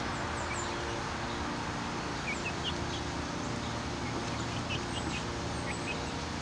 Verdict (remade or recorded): recorded